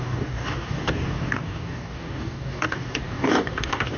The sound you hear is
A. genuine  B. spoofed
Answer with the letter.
B